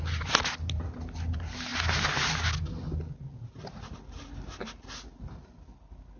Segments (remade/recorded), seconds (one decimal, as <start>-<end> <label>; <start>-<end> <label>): 0.0-6.2 recorded